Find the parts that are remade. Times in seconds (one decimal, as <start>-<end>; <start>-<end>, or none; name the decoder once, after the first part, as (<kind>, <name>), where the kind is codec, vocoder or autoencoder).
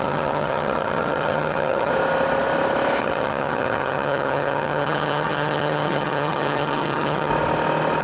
0.0-1.9 (vocoder, HiFi-GAN); 3.0-7.3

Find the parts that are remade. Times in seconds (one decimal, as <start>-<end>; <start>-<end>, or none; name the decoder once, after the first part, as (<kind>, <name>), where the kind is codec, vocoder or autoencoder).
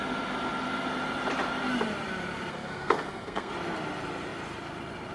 2.5-3.5 (codec, SNAC)